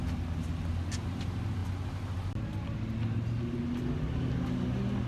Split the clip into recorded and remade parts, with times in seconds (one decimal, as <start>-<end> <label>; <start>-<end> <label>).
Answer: 0.0-5.1 recorded